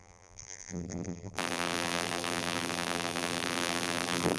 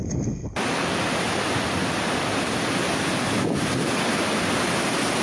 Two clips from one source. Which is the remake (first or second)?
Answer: first